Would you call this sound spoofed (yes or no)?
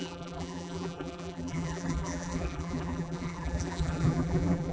yes